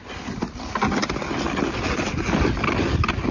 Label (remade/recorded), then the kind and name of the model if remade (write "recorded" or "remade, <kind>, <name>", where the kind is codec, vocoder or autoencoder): recorded